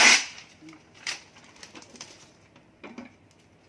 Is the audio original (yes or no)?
yes